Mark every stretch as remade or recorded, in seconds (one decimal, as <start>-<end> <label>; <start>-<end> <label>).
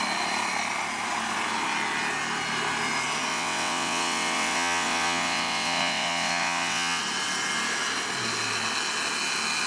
0.0-3.3 recorded; 3.3-7.0 remade; 7.0-9.7 recorded